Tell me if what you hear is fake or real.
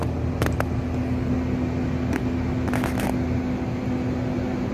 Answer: real